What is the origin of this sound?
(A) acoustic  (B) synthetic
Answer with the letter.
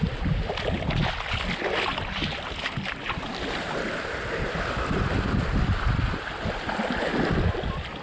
A